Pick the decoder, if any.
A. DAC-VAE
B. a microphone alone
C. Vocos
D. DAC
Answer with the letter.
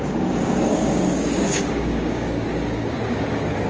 D